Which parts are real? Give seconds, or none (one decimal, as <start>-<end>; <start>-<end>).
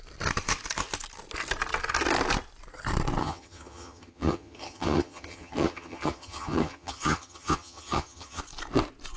0.0-3.2; 8.4-9.2